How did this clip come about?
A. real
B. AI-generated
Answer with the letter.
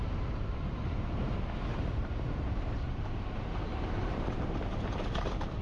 B